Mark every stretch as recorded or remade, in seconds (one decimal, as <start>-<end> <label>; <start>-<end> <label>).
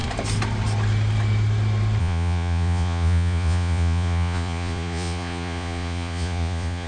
0.0-2.0 recorded; 2.0-6.9 remade